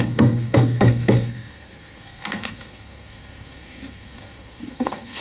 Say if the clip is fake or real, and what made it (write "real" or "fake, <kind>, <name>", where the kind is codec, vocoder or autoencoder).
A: fake, codec, SNAC